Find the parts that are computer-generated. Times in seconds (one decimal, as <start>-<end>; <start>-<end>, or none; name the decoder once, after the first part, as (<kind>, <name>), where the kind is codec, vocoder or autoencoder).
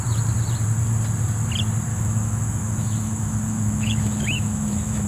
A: 1.9-5.1 (autoencoder, DAC-VAE)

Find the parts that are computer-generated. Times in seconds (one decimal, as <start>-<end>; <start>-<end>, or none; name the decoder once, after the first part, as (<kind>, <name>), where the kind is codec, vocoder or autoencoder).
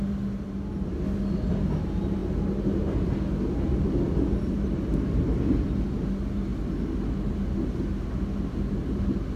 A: none